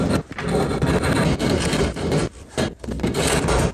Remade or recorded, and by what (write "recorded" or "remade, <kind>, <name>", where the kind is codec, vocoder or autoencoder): recorded